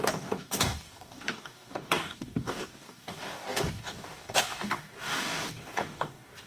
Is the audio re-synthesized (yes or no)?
yes